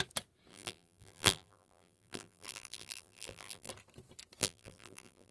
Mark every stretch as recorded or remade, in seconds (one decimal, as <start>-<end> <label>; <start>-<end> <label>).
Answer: 0.0-0.5 recorded; 0.5-3.7 remade; 3.7-4.4 recorded; 4.4-5.3 remade